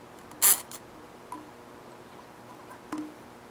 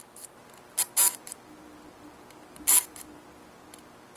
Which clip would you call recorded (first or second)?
first